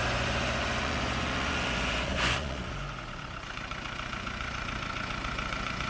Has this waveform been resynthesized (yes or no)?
yes